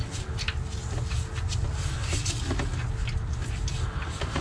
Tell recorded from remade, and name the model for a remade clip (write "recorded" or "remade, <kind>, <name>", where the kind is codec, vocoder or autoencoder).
recorded